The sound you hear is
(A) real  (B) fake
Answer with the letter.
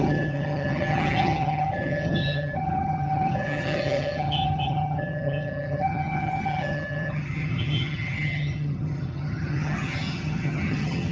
B